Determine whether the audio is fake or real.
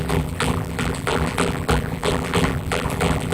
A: fake